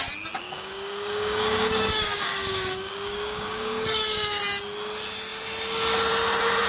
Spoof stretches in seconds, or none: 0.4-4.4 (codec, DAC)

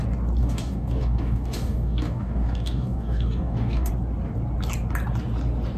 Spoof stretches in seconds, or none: 0.4-3.9 (codec, DAC)

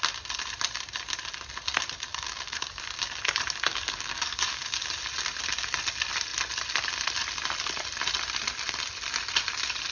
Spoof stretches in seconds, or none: 2.1-2.8 (codec, DAC); 3.7-4.6

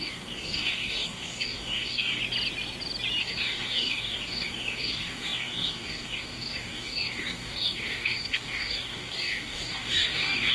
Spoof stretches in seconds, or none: 0.0-2.2 (codec, DAC); 3.2-10.5

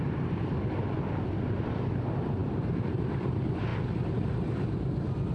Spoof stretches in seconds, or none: none

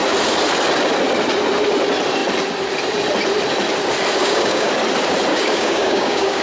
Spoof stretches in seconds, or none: 4.2-4.7 (codec, DAC); 5.3-6.4

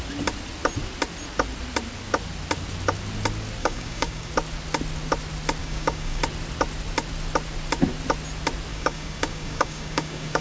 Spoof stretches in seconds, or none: 3.6-4.3 (codec, DAC); 5.6-6.2; 8.7-10.4

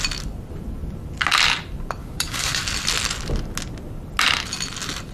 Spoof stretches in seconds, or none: 2.0-2.6 (codec, DAC)